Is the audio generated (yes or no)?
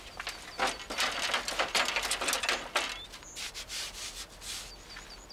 no